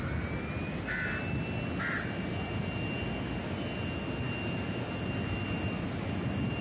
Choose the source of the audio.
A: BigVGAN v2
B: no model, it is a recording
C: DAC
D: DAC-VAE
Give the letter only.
B